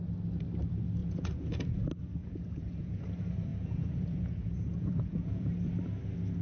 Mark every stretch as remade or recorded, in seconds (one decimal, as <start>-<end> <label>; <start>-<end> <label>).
0.0-1.0 recorded; 1.0-1.8 remade; 1.8-2.2 recorded; 2.2-3.0 remade; 3.0-3.5 recorded; 3.5-5.5 remade; 5.5-6.4 recorded